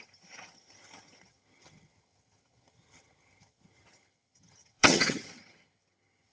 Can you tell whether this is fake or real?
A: fake